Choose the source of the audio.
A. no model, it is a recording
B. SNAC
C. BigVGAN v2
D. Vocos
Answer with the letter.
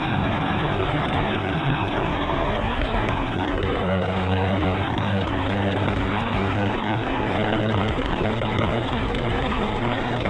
B